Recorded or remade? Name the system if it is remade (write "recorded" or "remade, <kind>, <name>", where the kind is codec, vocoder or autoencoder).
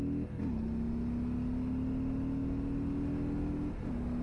recorded